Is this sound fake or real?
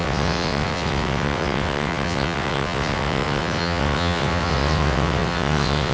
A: fake